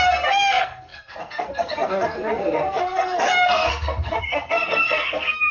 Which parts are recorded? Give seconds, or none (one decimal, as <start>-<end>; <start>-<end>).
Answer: none